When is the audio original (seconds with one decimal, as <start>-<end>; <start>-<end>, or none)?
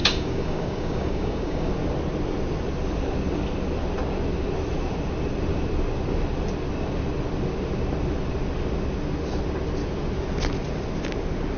1.7-11.6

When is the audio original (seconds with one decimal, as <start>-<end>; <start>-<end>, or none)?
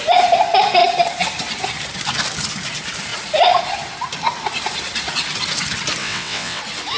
0.0-6.0; 6.6-7.0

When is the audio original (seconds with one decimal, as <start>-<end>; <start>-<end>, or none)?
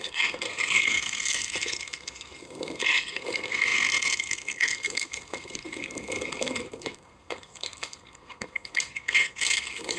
none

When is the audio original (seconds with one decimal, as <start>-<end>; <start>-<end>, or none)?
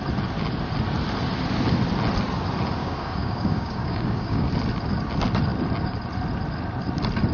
0.0-2.8; 4.5-7.3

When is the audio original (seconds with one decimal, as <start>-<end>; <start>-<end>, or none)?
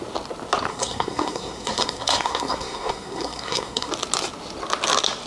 0.0-0.7; 3.9-5.3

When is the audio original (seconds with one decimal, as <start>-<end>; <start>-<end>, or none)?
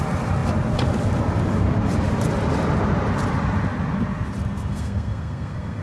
0.0-4.7